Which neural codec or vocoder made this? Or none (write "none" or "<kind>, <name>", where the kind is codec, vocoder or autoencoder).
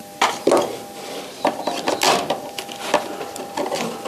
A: none